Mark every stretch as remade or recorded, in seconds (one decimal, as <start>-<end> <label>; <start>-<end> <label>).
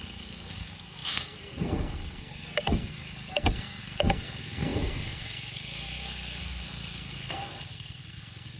0.0-8.6 remade